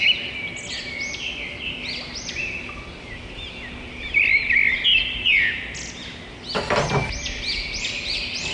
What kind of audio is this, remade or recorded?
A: recorded